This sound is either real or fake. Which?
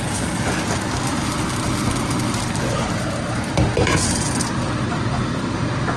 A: real